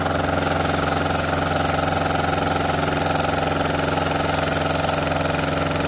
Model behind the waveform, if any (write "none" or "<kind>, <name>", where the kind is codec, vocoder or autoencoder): none